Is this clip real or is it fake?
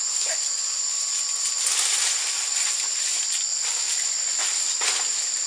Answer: real